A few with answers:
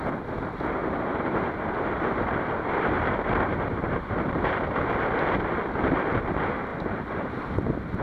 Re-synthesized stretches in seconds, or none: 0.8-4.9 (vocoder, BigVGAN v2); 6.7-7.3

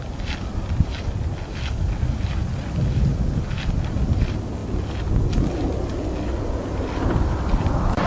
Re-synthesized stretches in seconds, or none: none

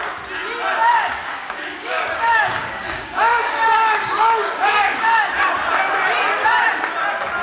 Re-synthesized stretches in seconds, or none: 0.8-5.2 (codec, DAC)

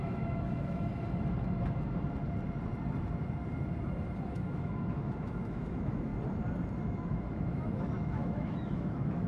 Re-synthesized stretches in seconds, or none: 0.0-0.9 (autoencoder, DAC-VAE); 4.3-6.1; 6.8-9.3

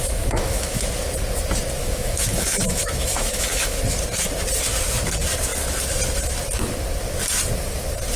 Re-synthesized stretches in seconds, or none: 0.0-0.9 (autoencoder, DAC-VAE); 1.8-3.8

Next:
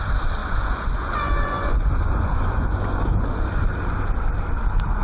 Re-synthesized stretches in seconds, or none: 0.4-3.4 (vocoder, Vocos)

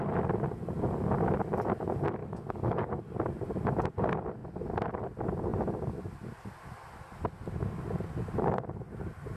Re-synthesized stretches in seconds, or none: 2.2-2.9 (codec, DAC)

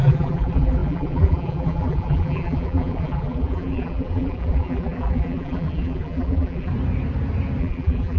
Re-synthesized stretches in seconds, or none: 0.0-6.7 (vocoder, BigVGAN v2); 7.6-8.2